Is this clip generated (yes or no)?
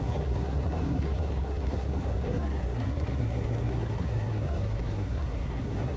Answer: yes